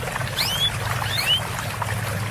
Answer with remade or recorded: recorded